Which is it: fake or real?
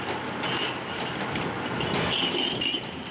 real